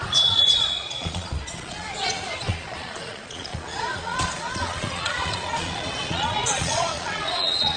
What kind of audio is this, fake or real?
fake